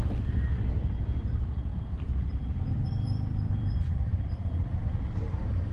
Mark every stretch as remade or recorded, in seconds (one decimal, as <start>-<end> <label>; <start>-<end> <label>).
0.0-1.7 recorded; 1.7-4.8 remade; 4.8-5.7 recorded